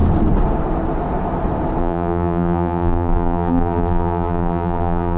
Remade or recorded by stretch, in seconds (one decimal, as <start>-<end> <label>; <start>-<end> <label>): 0.0-1.8 recorded; 1.8-5.2 remade